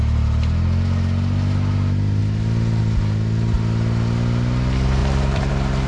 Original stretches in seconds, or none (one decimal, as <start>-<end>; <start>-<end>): 0.0-2.2; 2.8-5.0; 5.5-5.9